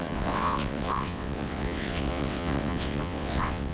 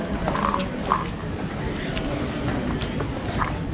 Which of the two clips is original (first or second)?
second